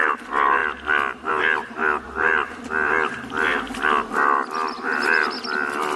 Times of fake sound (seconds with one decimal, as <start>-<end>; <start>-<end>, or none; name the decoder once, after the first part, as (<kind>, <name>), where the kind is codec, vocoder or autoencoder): none